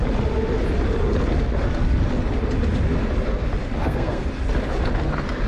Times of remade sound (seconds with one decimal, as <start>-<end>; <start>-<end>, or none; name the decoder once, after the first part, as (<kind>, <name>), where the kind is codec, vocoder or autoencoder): 3.8-4.3 (codec, SNAC)